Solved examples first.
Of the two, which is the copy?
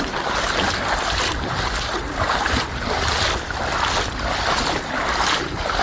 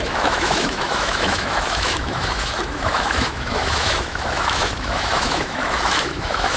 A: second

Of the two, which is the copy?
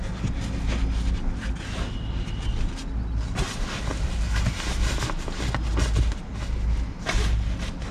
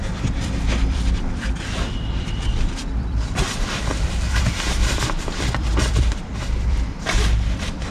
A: second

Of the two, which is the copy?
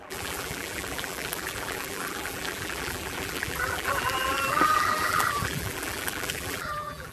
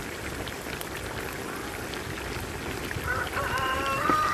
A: first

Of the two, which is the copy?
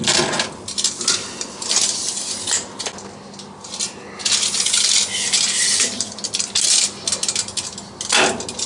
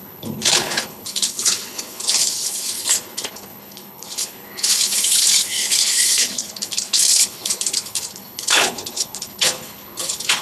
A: second